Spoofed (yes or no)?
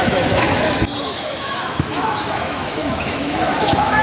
yes